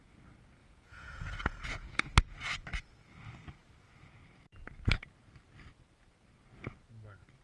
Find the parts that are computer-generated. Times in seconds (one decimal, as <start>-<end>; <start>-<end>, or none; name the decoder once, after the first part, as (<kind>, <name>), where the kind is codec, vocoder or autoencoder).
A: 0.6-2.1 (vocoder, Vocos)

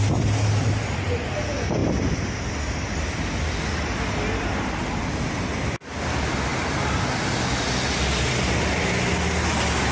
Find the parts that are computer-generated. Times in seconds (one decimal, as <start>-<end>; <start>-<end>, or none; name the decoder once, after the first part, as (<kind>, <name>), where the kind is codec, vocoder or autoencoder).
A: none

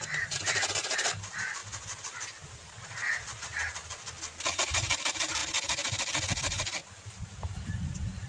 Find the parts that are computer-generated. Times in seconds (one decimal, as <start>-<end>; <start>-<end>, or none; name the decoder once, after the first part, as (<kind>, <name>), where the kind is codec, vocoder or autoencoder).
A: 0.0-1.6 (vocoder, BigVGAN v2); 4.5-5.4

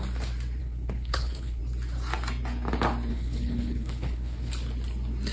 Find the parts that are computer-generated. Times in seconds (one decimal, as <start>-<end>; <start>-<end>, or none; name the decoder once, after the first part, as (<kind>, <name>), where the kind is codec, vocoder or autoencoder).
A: 0.6-1.6 (codec, HILCodec); 3.1-4.5

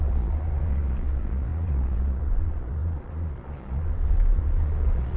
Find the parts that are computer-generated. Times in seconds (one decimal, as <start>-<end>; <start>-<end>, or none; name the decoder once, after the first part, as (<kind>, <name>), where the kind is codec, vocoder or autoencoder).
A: 0.0-5.2 (vocoder, Vocos)